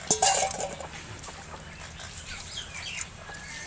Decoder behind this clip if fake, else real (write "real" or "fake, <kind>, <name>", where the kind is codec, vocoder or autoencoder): real